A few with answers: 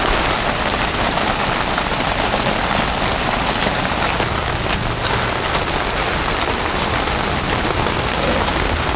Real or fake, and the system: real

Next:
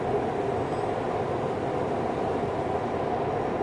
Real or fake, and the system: real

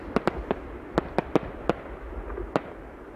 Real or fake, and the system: real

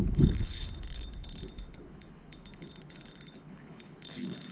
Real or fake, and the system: fake, codec, HILCodec